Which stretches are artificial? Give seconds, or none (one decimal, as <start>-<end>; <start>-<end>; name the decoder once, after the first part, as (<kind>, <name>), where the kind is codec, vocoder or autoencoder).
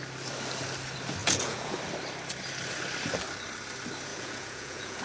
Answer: 1.2-1.7 (vocoder, Vocos); 4.1-5.0